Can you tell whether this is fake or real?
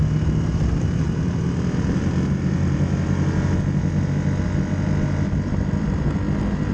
real